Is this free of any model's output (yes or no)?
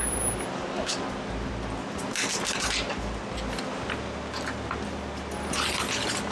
yes